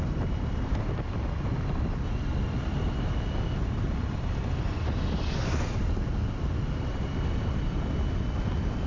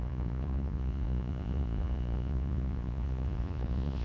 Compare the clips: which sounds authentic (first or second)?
first